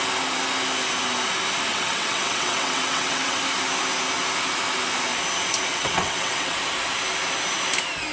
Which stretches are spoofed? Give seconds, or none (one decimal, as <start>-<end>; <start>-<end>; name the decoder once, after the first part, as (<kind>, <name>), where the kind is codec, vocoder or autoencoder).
1.7-3.4 (vocoder, WaveNeXt); 5.7-6.6